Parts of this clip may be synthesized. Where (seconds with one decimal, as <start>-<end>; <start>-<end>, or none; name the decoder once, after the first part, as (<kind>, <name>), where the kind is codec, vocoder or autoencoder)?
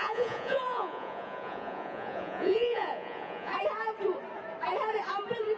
0.0-3.5 (vocoder, Vocos)